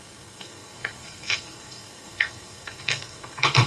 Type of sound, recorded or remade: remade